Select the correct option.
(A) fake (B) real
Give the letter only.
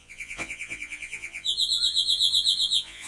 A